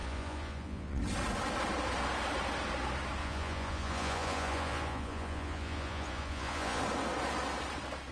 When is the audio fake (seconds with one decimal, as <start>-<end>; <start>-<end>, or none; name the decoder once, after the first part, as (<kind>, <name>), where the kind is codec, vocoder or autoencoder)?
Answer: 0.0-1.0 (vocoder, Vocos); 3.2-6.8